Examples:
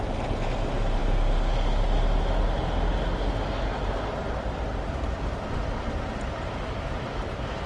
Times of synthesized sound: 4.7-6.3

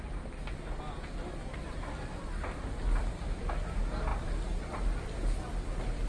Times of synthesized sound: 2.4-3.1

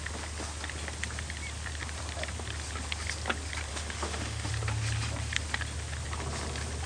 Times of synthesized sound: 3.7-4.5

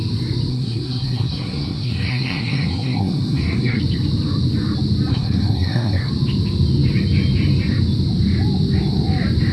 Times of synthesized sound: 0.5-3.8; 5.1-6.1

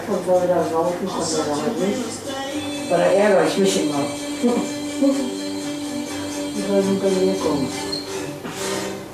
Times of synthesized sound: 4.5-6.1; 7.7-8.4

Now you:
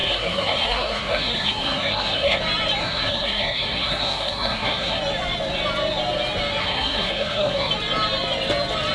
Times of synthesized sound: 0.0-2.4; 2.8-5.0; 6.6-7.7